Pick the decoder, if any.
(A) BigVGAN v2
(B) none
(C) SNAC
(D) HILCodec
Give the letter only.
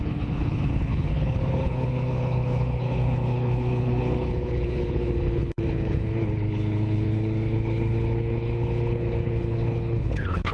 D